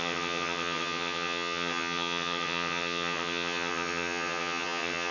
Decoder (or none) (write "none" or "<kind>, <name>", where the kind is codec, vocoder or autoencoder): vocoder, HiFi-GAN